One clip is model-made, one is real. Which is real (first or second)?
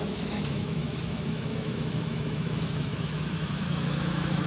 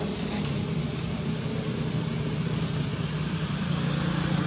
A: second